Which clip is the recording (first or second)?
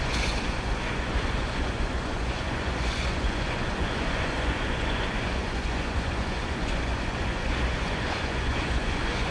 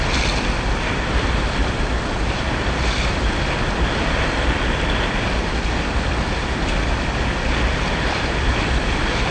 second